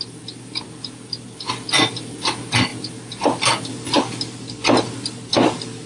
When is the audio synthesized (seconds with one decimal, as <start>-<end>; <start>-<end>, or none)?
none